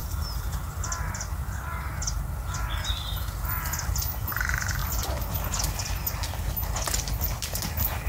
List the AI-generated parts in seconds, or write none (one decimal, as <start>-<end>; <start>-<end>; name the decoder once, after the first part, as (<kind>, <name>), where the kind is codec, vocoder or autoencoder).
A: none